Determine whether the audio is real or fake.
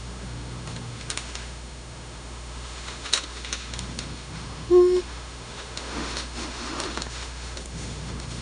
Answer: fake